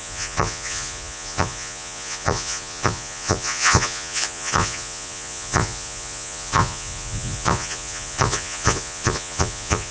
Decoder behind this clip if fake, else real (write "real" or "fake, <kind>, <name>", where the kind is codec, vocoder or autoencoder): fake, vocoder, Vocos